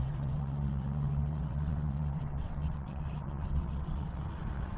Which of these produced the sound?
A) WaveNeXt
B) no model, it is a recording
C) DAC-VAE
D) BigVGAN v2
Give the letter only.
A